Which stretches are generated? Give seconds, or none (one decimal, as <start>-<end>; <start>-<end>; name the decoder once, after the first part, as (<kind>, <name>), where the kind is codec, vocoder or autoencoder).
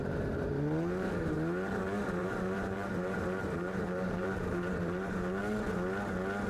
0.0-0.5 (vocoder, BigVGAN v2); 2.2-5.4